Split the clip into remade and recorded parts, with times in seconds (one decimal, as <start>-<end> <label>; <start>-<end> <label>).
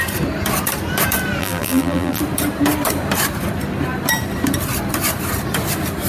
0.0-1.4 recorded; 1.4-2.2 remade; 2.2-6.1 recorded